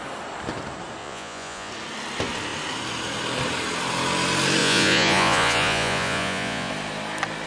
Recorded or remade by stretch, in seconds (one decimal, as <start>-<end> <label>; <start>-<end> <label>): 0.0-1.0 recorded; 1.0-1.7 remade; 1.7-4.6 recorded; 4.6-6.7 remade; 6.7-7.5 recorded